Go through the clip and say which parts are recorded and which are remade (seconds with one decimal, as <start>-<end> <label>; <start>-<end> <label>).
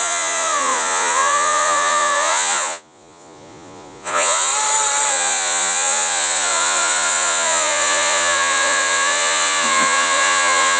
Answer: 0.0-4.5 remade; 4.5-5.1 recorded; 5.1-10.8 remade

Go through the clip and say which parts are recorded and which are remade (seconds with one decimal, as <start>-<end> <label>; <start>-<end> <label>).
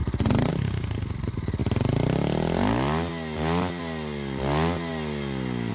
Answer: 0.0-5.7 recorded